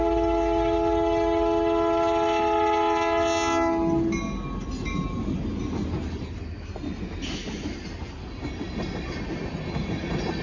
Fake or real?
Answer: real